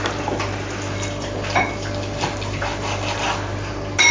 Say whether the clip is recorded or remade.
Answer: recorded